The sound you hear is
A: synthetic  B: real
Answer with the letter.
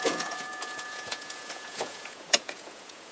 A